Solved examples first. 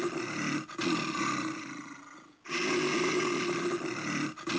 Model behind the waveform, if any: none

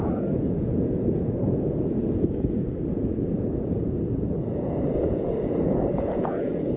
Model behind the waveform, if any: vocoder, Vocos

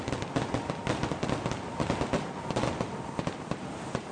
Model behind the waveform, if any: none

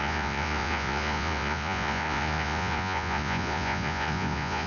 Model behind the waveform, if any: vocoder, Vocos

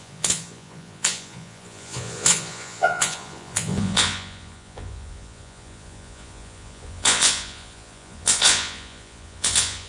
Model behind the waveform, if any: vocoder, Vocos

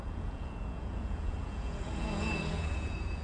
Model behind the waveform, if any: vocoder, Vocos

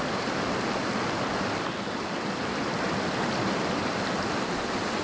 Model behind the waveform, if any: none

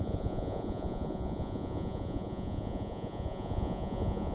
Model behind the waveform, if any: vocoder, Vocos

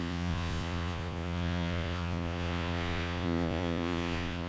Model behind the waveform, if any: vocoder, Vocos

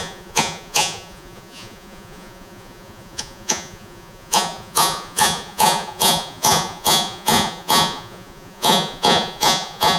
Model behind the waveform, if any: vocoder, Vocos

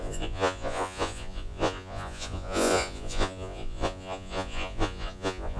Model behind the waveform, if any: vocoder, Vocos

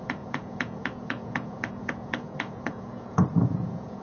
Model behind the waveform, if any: vocoder, Vocos